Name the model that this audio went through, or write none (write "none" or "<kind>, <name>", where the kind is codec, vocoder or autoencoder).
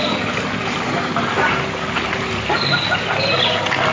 none